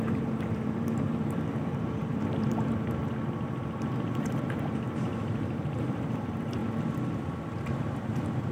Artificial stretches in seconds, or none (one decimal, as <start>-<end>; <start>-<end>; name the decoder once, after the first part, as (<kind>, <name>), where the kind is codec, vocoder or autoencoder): 0.0-3.0 (vocoder, BigVGAN v2); 3.9-6.6; 7.4-8.5